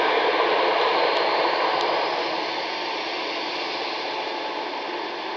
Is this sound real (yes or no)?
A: yes